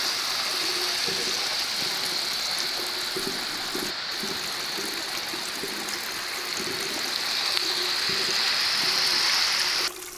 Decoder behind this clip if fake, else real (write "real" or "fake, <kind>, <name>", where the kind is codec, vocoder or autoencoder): real